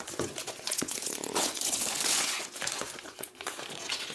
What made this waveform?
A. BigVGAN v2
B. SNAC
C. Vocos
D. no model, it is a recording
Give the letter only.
C